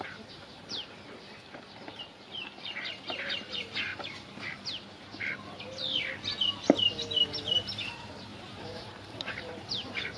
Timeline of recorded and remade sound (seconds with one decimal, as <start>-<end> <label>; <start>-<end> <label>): 0.0-3.9 remade; 3.9-7.9 recorded; 7.9-10.2 remade